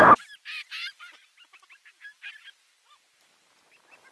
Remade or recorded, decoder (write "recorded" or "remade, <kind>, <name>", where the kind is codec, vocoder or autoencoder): recorded